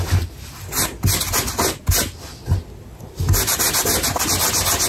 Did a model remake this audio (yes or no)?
no